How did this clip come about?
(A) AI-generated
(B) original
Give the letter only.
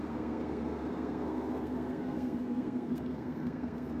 A